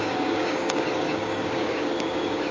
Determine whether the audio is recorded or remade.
remade